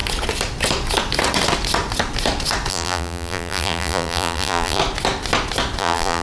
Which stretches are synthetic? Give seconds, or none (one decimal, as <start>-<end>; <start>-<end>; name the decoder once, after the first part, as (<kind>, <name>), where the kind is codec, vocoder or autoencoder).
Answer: 2.7-4.8 (vocoder, BigVGAN v2); 5.8-6.2